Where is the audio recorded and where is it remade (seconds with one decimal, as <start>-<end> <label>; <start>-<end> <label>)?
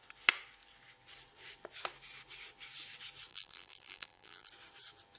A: 0.0-3.3 recorded; 3.3-4.5 remade; 4.5-5.2 recorded